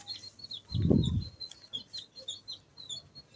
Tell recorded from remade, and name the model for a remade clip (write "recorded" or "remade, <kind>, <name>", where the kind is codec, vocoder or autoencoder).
recorded